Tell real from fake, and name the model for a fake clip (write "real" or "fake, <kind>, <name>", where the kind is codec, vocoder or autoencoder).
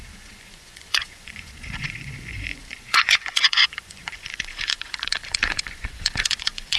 fake, vocoder, Vocos